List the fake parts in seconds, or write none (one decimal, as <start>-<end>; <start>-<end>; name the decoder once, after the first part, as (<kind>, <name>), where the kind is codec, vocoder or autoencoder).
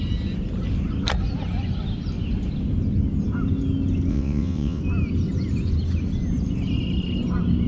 4.1-4.8 (vocoder, WaveNeXt)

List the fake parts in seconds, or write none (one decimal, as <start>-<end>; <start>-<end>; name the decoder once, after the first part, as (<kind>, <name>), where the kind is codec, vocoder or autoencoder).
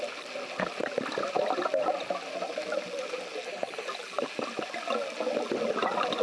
none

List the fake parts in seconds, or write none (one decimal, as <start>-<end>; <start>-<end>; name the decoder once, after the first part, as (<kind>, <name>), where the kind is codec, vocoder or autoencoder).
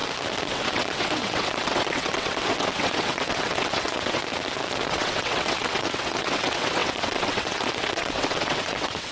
0.5-4.2 (vocoder, WaveNeXt); 4.9-9.1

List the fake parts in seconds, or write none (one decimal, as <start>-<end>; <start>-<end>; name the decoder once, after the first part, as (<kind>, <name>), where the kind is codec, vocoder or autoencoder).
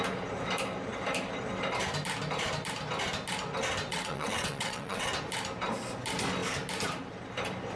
3.9-5.1 (vocoder, WaveNeXt)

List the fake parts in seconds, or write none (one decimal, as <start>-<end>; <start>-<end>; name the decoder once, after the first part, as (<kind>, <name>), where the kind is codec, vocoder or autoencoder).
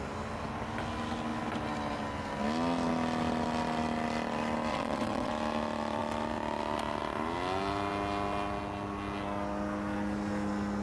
4.7-5.3 (vocoder, WaveNeXt)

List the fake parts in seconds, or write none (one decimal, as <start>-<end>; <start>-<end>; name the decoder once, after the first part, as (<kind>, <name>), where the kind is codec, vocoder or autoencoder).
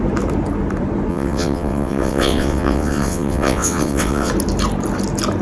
1.1-4.3 (vocoder, WaveNeXt)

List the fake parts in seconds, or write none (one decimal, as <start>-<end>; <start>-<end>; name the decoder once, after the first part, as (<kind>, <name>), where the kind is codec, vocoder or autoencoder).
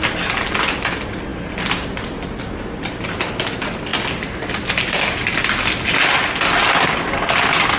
none